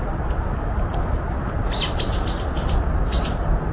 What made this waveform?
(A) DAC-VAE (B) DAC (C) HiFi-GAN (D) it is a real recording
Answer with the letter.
D